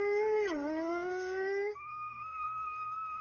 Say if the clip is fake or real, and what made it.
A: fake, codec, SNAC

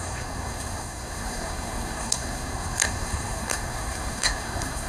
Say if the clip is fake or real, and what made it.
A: fake, codec, SNAC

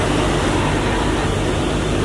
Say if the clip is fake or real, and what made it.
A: real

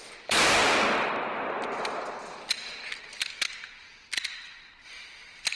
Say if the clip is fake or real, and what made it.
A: real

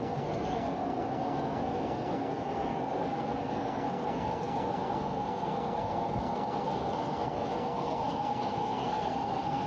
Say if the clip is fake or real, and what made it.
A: fake, codec, SNAC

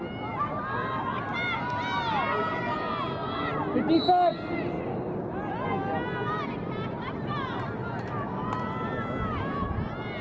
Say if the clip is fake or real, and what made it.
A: real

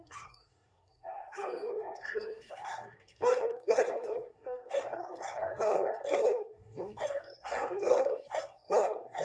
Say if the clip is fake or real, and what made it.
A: fake, codec, SNAC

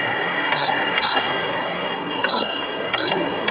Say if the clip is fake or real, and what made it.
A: fake, codec, SNAC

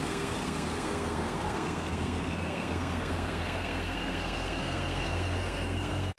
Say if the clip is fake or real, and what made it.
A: fake, codec, SNAC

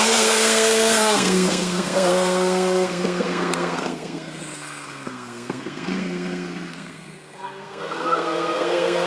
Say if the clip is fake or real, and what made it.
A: fake, codec, SNAC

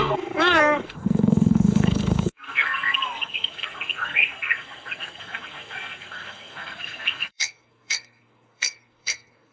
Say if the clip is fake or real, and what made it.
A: fake, codec, SNAC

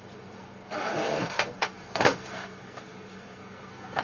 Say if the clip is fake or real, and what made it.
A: fake, codec, SNAC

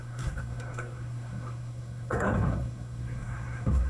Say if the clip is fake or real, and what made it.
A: fake, codec, SNAC